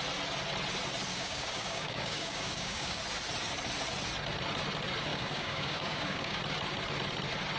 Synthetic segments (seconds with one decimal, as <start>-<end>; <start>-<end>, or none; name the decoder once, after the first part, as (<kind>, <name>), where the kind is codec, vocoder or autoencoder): 1.1-3.0 (codec, DAC); 5.1-6.4